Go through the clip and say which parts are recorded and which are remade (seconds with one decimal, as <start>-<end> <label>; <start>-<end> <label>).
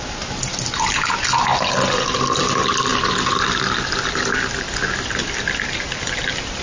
0.0-6.6 recorded